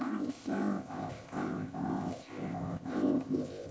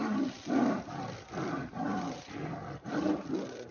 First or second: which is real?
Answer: second